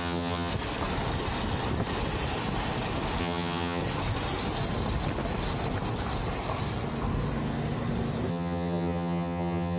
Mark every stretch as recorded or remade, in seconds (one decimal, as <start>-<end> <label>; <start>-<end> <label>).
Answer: 0.0-0.5 remade; 0.5-3.2 recorded; 3.2-3.8 remade; 3.8-8.3 recorded; 8.3-9.8 remade